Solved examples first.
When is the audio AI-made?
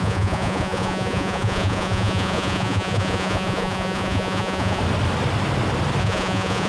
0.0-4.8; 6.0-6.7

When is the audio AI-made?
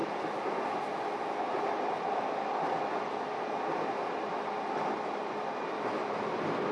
none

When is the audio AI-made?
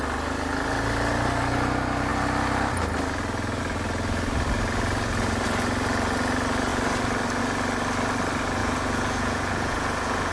8.6-10.3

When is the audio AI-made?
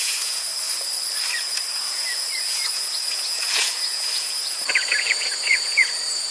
0.0-0.5; 1.3-6.3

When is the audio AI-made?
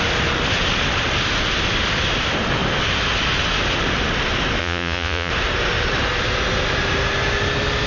4.6-5.3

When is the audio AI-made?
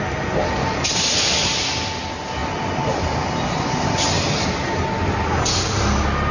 none